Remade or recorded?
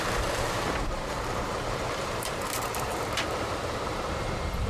remade